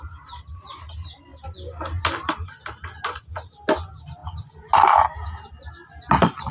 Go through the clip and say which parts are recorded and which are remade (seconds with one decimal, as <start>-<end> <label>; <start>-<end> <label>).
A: 0.0-6.5 recorded